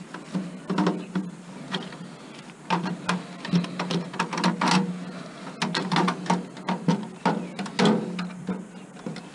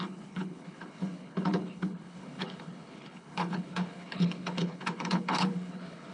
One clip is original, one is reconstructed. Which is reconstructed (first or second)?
second